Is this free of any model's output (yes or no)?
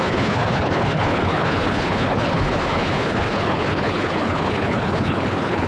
no